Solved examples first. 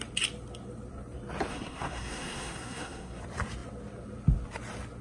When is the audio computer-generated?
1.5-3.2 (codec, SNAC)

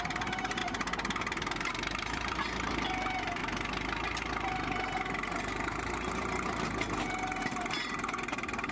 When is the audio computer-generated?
0.0-0.6 (vocoder, BigVGAN v2); 1.7-3.4; 7.4-8.7

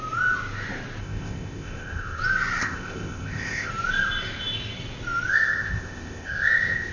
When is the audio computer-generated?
1.0-2.2 (codec, ZipCodec); 2.6-3.7; 5.3-6.9

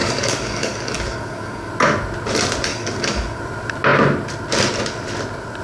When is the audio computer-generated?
0.0-1.7 (codec, DAC); 2.7-3.4

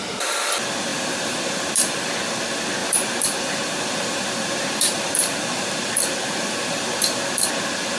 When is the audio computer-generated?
0.9-1.7 (vocoder, BigVGAN v2); 2.8-7.5

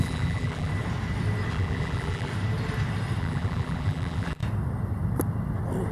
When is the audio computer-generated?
0.0-0.7 (vocoder, BigVGAN v2); 1.5-2.3; 3.2-4.4

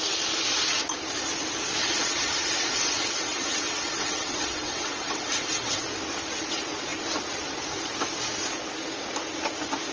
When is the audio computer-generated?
1.8-5.8 (vocoder, WaveNeXt)